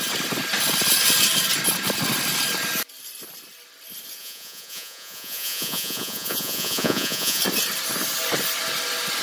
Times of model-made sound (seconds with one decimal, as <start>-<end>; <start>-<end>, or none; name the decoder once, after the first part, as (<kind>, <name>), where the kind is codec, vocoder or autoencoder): 4.2-7.4 (vocoder, Vocos)